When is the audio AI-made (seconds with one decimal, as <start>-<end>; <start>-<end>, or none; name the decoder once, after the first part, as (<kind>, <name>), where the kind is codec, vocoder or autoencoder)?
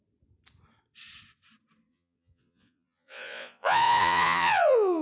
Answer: 1.9-5.0 (vocoder, Vocos)